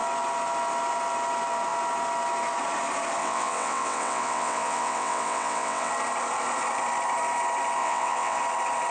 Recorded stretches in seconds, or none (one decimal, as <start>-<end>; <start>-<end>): 0.0-3.2; 5.9-7.8; 8.4-8.9